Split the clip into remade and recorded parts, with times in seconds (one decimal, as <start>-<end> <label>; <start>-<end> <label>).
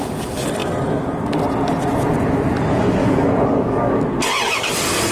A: 0.0-3.0 recorded; 3.0-4.0 remade; 4.0-5.1 recorded